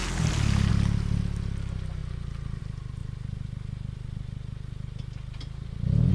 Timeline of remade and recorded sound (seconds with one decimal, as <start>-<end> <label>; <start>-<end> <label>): 0.0-6.1 recorded